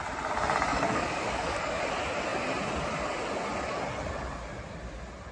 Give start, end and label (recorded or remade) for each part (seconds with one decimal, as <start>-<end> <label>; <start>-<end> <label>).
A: 0.0-0.7 recorded; 0.7-1.8 remade; 1.8-5.3 recorded